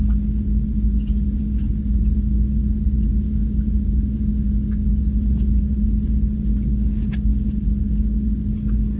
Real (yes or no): yes